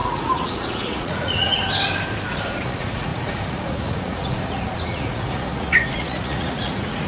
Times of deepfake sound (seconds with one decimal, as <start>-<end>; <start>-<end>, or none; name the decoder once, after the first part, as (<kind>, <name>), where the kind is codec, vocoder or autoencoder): 0.0-1.6 (vocoder, Vocos); 2.6-7.1